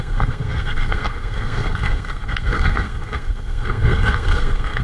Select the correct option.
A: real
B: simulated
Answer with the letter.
B